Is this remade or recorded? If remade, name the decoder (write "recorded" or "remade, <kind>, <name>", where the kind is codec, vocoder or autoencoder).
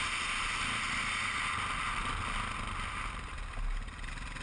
recorded